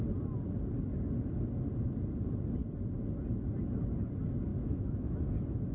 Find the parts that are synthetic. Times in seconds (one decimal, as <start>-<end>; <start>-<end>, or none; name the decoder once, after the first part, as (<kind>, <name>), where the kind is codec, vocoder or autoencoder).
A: 4.5-5.2 (autoencoder, DAC-VAE)